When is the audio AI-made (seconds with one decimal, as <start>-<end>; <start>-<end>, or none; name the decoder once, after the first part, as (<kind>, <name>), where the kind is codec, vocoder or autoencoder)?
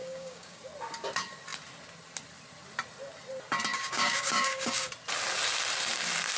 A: 0.0-0.6 (codec, DAC); 3.7-4.9